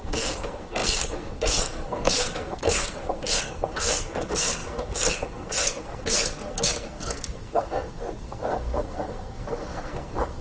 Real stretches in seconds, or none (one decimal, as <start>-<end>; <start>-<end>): none

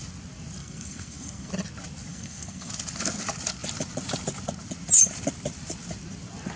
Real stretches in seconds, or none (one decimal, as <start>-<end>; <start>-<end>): 0.0-0.6; 1.5-2.1; 2.7-6.6

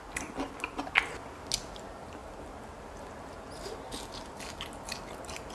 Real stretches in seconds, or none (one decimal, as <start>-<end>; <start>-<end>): 0.0-5.5

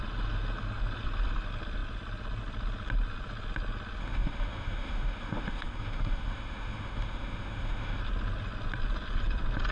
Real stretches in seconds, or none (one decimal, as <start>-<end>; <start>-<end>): 0.0-4.0; 8.0-9.7

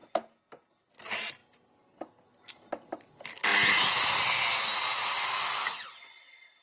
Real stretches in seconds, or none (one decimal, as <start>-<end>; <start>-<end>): 0.0-6.6

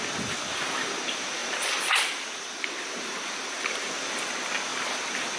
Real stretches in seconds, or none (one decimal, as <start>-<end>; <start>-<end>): 0.0-5.4

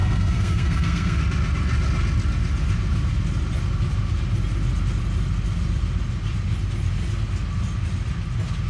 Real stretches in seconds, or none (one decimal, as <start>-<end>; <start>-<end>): 1.2-8.7

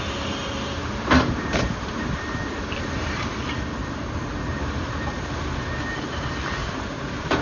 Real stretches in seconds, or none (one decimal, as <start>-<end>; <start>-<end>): 0.0-0.4; 3.4-3.8